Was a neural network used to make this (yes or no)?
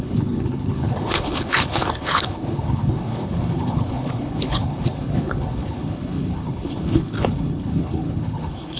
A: yes